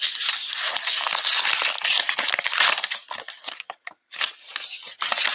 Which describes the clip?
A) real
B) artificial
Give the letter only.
A